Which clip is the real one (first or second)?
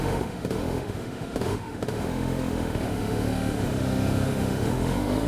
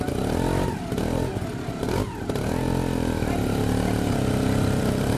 second